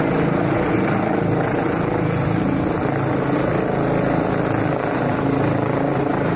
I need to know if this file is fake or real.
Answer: real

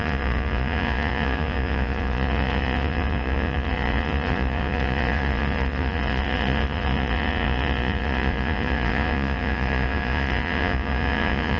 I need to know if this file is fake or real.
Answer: fake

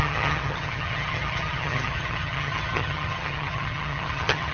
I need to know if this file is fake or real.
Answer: fake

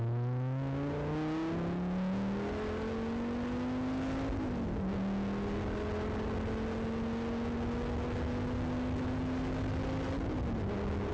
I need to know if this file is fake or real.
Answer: real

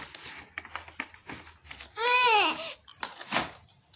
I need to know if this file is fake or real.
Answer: real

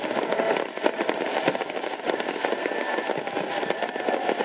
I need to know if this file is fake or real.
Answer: fake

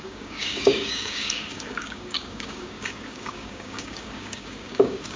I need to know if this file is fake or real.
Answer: fake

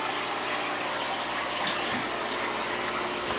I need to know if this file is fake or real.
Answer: real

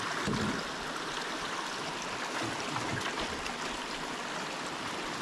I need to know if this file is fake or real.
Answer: real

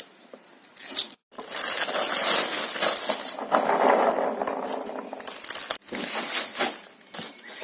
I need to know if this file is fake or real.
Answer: real